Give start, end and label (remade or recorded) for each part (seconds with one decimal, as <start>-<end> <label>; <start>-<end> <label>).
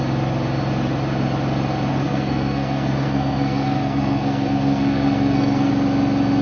0.0-1.9 recorded; 1.9-5.7 remade; 5.7-6.4 recorded